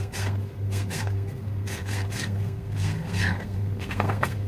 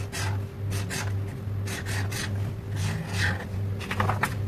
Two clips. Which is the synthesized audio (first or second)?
first